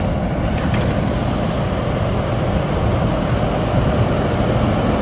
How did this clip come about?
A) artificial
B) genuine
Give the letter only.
B